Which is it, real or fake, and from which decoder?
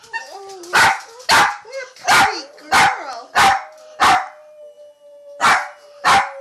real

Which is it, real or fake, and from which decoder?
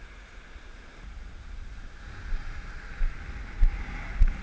real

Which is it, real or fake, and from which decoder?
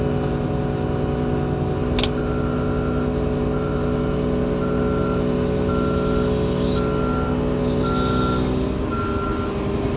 real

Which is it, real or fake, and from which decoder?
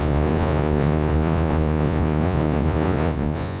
fake, vocoder, Vocos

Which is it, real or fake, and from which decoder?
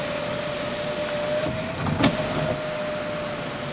real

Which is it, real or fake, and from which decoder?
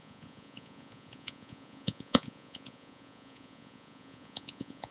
fake, vocoder, Vocos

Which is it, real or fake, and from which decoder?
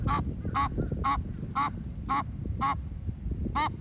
real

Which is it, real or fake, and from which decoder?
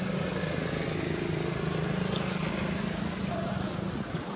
real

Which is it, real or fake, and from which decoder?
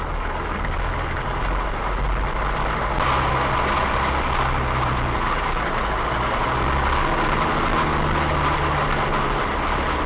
real